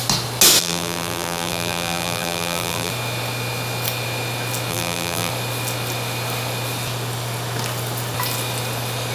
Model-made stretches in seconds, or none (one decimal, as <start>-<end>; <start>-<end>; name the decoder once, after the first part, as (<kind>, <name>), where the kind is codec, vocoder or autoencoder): 0.6-2.9 (vocoder, BigVGAN v2); 4.7-5.3